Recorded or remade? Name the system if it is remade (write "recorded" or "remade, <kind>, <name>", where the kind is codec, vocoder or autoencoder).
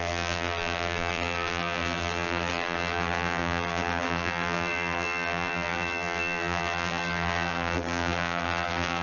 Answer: remade, vocoder, BigVGAN v2